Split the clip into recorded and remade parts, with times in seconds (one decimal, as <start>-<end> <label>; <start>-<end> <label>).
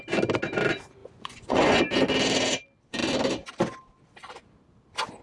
0.0-1.0 recorded; 1.0-1.8 remade; 1.8-5.2 recorded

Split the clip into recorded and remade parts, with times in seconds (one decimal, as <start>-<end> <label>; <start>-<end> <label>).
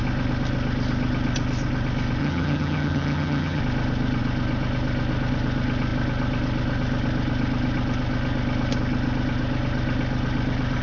0.0-2.2 recorded; 2.2-3.6 remade; 3.6-10.8 recorded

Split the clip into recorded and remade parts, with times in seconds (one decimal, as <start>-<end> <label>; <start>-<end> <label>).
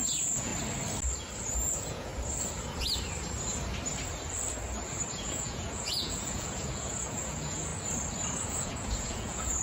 0.0-0.5 remade; 0.5-1.5 recorded; 1.5-2.1 remade; 2.1-5.1 recorded; 5.1-7.7 remade; 7.7-8.3 recorded; 8.3-9.6 remade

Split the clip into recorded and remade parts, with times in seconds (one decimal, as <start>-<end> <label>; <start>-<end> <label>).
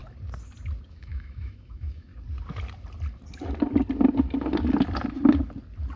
0.0-0.9 recorded; 0.9-2.1 remade; 2.1-6.0 recorded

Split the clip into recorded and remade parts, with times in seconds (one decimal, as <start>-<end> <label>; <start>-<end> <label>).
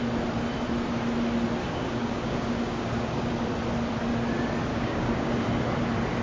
0.0-1.6 recorded; 1.6-3.3 remade; 3.3-4.7 recorded; 4.7-5.3 remade; 5.3-6.2 recorded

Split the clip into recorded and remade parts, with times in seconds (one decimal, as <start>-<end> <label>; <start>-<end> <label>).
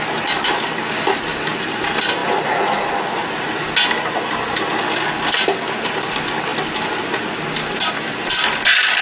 0.0-9.0 recorded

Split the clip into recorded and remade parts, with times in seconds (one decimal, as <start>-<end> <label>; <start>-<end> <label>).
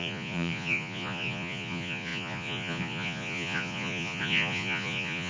0.0-5.3 remade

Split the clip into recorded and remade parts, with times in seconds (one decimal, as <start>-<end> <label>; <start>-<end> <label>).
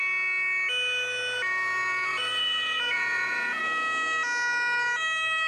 0.0-2.1 recorded; 2.1-3.6 remade; 3.6-5.5 recorded